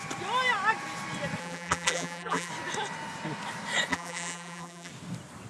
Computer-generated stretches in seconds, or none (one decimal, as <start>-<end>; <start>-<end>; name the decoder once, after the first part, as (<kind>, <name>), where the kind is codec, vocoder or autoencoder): 1.4-2.5 (vocoder, BigVGAN v2); 3.9-4.9